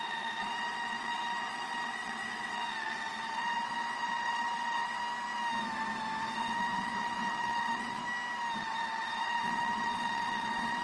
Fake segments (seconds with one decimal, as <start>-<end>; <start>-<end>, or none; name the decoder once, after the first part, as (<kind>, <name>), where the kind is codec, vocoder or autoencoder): 0.0-5.0 (vocoder, WaveNeXt); 6.2-8.0; 8.6-10.8